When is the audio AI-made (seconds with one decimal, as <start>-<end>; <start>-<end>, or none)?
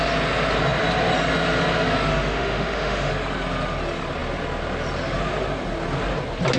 2.1-3.1